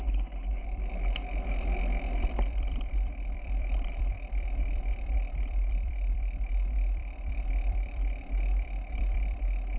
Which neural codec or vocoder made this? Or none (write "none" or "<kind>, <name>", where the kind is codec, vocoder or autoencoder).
vocoder, BigVGAN v2